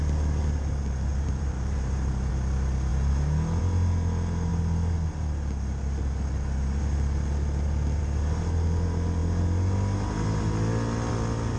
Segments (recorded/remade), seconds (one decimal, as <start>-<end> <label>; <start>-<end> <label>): 0.0-1.1 recorded; 1.1-2.3 remade; 2.3-11.6 recorded